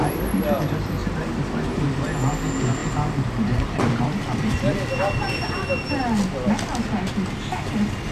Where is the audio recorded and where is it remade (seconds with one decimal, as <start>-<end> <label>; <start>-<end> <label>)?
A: 0.0-1.0 recorded; 1.0-1.9 remade; 1.9-2.8 recorded; 2.8-4.5 remade; 4.5-8.1 recorded